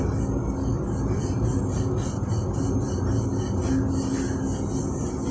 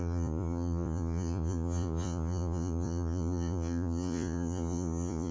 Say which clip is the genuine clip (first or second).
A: first